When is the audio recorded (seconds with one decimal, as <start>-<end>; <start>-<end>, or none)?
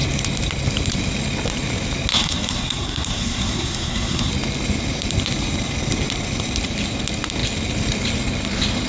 0.0-2.1; 4.3-8.9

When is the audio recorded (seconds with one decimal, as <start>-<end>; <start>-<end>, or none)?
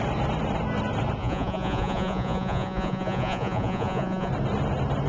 0.0-1.2; 4.3-5.1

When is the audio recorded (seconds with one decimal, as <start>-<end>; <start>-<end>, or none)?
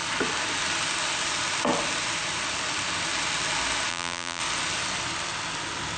0.0-3.9; 4.4-6.0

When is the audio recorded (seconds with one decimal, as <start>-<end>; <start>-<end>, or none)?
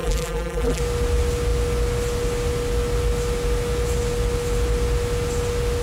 0.8-5.8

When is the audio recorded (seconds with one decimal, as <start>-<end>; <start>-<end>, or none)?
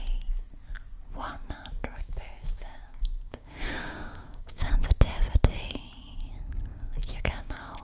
0.0-1.8; 4.7-6.7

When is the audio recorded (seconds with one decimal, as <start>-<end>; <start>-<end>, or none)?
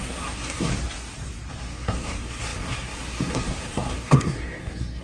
0.7-1.5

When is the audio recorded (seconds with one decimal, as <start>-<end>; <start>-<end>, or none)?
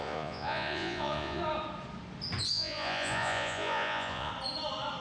1.4-2.5; 4.3-5.0